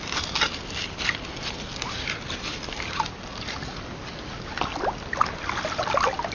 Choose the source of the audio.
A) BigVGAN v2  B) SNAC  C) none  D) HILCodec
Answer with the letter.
C